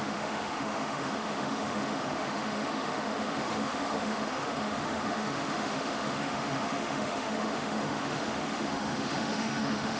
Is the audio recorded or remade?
remade